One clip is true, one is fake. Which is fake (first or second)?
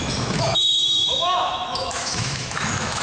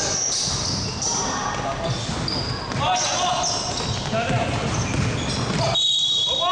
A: first